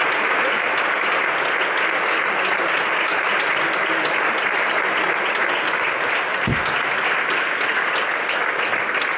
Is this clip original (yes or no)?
yes